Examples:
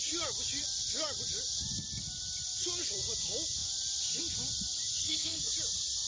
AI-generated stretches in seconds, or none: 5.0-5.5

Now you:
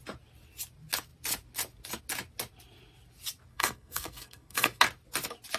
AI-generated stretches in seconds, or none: 3.5-4.8

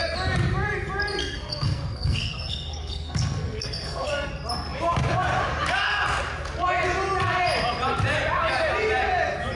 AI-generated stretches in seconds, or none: 1.2-4.3

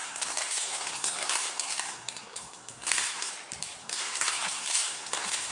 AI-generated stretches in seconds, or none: 0.0-3.3; 3.8-5.5

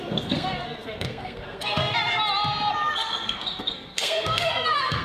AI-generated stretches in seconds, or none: 0.0-2.1; 2.9-5.0